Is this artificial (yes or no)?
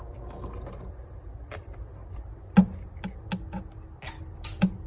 no